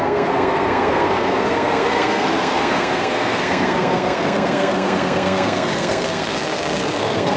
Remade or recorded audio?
remade